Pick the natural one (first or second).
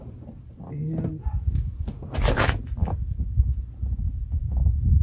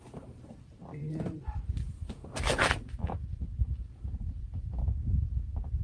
first